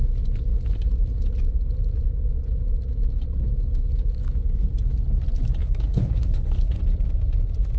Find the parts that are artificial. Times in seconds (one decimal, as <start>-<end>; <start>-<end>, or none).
5.6-6.8